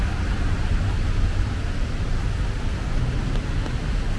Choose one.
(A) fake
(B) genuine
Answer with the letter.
B